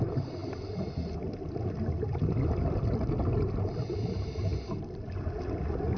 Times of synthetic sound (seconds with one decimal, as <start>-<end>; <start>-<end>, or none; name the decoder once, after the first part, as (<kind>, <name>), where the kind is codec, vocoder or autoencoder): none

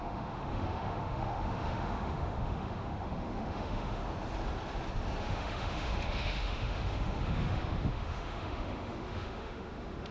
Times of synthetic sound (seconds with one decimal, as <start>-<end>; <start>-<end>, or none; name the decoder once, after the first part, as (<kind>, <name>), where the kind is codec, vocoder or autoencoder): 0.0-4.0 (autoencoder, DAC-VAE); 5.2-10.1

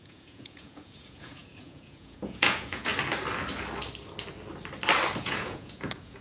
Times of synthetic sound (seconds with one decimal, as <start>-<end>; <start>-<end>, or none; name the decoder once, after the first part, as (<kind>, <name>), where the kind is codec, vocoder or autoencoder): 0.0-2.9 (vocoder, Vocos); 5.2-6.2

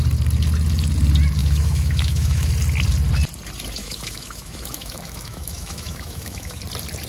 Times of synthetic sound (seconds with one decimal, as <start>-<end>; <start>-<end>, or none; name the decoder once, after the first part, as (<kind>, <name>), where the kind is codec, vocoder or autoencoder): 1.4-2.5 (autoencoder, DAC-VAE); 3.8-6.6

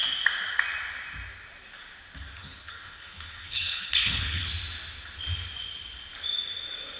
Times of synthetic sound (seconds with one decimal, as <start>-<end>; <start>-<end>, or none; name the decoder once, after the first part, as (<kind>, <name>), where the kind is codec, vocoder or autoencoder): 2.4-4.5 (codec, HILCodec)

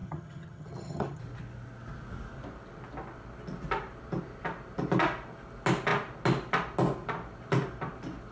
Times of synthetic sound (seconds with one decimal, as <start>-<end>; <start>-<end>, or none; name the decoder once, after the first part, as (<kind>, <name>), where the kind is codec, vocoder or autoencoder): 0.0-1.2 (vocoder, HiFi-GAN)

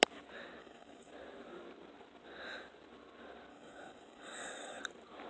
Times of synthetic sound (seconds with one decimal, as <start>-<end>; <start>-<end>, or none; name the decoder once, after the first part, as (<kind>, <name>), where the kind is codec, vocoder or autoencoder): 0.6-1.1 (codec, DAC); 3.5-4.8

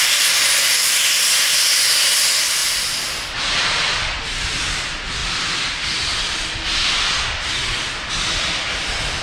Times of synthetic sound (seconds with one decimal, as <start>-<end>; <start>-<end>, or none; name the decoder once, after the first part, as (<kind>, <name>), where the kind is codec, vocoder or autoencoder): none